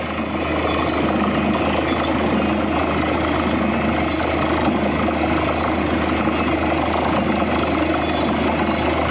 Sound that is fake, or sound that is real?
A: real